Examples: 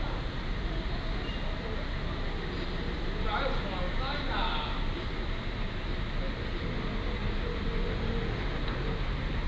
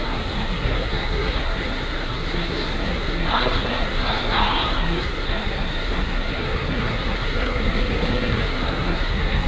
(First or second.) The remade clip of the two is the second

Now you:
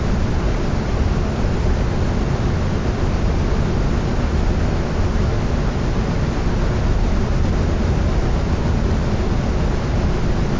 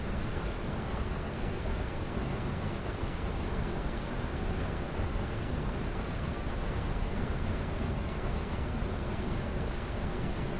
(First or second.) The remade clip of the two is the second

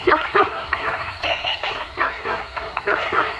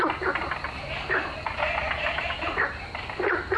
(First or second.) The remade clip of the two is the first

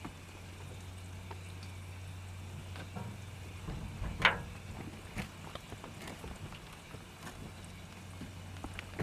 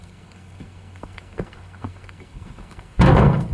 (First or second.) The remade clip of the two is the second